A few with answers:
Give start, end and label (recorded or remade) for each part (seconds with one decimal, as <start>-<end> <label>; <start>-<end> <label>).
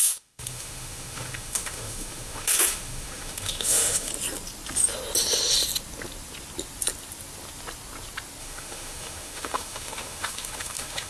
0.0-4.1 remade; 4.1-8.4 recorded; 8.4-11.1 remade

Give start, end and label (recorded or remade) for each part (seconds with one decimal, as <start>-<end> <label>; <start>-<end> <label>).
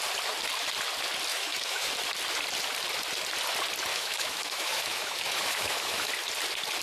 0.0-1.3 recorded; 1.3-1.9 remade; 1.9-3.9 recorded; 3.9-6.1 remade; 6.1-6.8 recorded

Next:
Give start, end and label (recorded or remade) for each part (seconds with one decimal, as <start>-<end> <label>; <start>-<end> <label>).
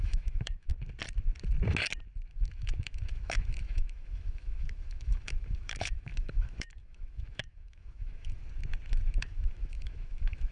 0.0-0.7 remade; 0.7-2.3 recorded; 2.3-8.4 remade; 8.4-9.2 recorded; 9.2-10.5 remade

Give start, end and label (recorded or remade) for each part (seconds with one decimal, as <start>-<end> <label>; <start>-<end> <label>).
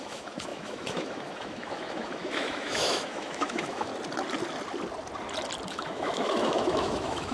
0.0-3.9 remade; 3.9-5.7 recorded; 5.7-7.3 remade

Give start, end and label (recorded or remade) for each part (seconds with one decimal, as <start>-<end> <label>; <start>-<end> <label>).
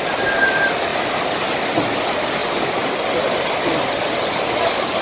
0.0-5.0 recorded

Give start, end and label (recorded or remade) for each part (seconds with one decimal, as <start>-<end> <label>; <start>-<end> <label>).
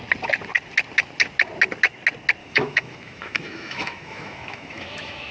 0.0-2.4 recorded; 2.4-5.3 remade